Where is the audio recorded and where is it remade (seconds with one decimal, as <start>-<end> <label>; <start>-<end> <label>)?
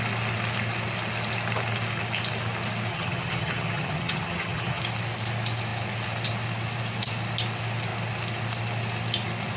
0.0-2.9 recorded; 2.9-4.8 remade; 4.8-9.6 recorded